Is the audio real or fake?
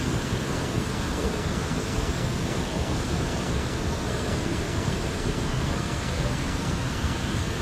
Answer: fake